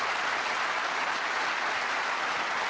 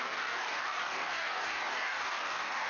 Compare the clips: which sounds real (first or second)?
first